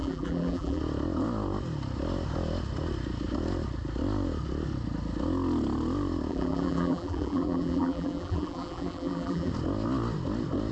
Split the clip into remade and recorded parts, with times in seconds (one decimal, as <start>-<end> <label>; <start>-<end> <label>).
0.0-0.8 remade; 0.8-6.3 recorded; 6.3-9.5 remade; 9.5-10.7 recorded